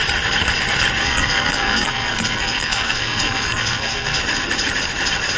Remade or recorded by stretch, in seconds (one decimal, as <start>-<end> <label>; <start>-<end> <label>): 0.0-1.0 recorded; 1.0-4.2 remade; 4.2-5.4 recorded